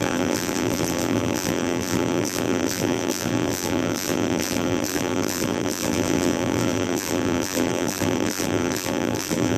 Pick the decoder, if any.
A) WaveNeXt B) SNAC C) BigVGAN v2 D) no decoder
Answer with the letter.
C